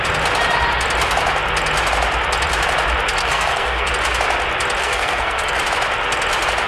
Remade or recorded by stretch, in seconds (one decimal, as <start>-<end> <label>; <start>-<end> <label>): 0.0-3.2 recorded; 3.2-3.9 remade; 3.9-4.8 recorded; 4.8-5.6 remade; 5.6-6.7 recorded